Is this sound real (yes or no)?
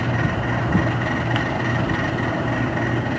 yes